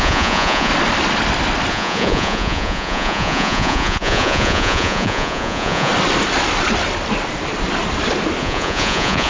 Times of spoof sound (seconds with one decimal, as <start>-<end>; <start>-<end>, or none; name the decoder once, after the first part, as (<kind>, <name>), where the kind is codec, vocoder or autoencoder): 0.0-0.7 (vocoder, Vocos); 1.7-5.9; 8.4-9.3